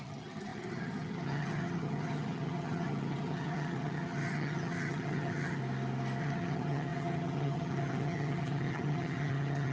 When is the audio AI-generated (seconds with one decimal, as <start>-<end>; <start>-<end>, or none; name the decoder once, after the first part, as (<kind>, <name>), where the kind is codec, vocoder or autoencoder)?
0.0-5.6 (vocoder, HiFi-GAN); 6.2-9.7